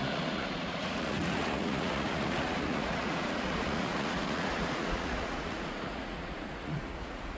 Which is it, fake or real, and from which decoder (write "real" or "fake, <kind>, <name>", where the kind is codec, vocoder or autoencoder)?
fake, vocoder, Vocos